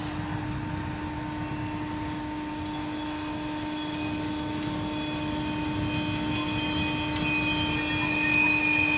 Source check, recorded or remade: recorded